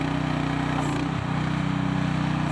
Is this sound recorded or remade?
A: recorded